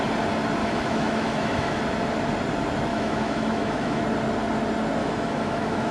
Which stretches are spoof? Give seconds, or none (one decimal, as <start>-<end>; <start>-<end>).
0.6-1.8; 2.9-4.0; 5.0-5.9